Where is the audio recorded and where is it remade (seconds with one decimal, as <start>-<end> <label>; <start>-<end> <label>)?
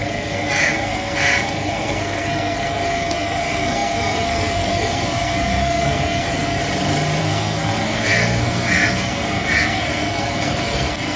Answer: 0.0-6.6 remade; 6.6-7.2 recorded; 7.2-11.2 remade